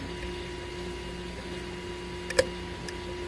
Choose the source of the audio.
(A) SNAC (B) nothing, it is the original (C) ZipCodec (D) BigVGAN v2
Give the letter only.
B